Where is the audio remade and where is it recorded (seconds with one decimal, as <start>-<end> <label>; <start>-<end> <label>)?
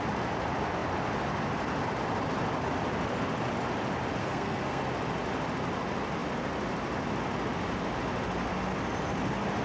0.0-4.2 recorded; 4.2-4.9 remade; 4.9-9.6 recorded